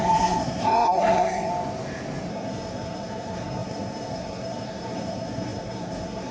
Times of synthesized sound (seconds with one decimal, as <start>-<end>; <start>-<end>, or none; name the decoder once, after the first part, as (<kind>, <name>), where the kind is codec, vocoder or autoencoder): 0.0-1.5 (codec, SNAC); 2.3-6.3